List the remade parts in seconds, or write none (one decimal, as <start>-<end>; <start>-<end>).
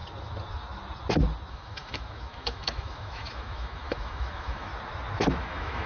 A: 1.5-4.7; 5.4-5.9